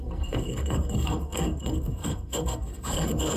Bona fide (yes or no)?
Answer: no